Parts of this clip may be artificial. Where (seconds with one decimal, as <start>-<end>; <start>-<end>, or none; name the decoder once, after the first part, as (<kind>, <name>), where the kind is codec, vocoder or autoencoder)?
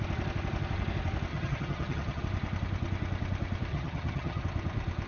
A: 1.3-2.2 (vocoder, HiFi-GAN); 3.7-4.4